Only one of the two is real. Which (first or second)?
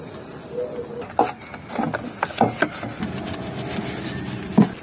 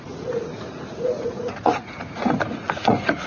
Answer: first